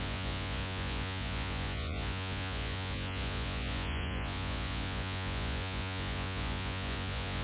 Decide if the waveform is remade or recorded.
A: remade